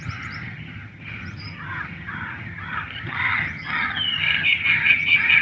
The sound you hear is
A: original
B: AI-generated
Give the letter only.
B